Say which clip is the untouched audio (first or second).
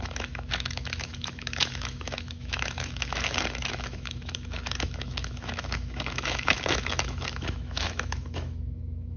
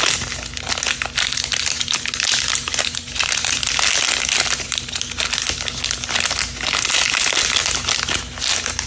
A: second